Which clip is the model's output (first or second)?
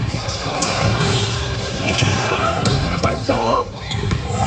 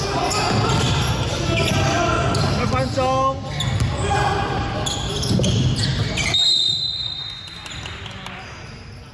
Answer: first